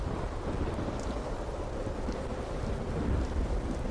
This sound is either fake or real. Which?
real